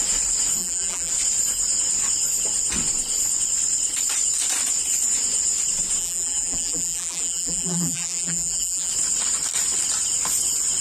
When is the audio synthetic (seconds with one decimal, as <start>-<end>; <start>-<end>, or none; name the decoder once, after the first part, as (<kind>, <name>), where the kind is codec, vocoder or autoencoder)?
0.6-1.1 (vocoder, BigVGAN v2); 6.0-8.9